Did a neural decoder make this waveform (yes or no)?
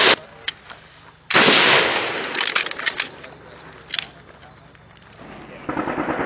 no